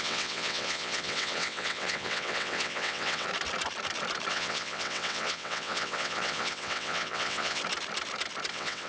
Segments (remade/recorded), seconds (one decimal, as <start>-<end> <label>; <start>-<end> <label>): 0.0-3.3 remade; 3.3-4.3 recorded; 4.3-7.6 remade; 7.6-8.5 recorded; 8.5-8.9 remade